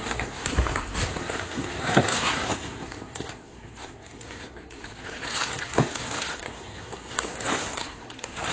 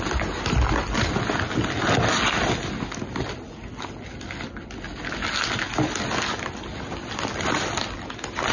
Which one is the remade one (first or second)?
first